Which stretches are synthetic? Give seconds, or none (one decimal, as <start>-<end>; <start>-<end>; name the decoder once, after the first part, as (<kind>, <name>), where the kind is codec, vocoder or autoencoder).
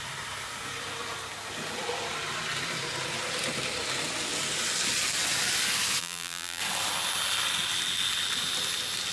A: 6.0-6.6 (vocoder, BigVGAN v2)